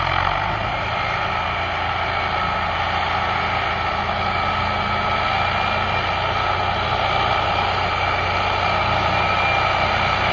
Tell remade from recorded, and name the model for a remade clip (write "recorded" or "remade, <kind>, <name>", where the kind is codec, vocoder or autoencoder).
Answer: recorded